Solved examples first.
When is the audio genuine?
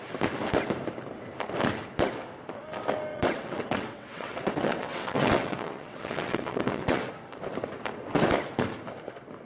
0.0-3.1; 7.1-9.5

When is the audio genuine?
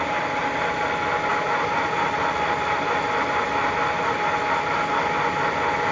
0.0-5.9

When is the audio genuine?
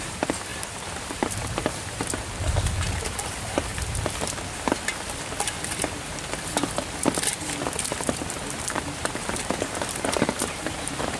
3.7-8.7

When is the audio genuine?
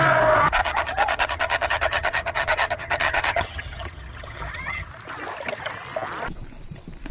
0.0-0.6; 4.9-7.1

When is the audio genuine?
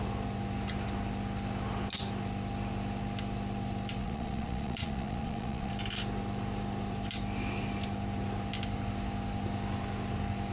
0.0-4.0; 5.7-10.5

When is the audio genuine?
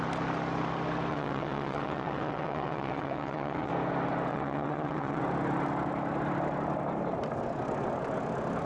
0.0-1.1; 3.7-4.3; 5.2-8.7